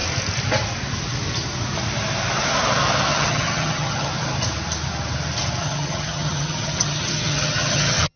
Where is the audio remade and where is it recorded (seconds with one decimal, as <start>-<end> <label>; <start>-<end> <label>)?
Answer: 0.0-3.1 recorded; 3.1-4.1 remade; 4.1-5.6 recorded; 5.6-8.2 remade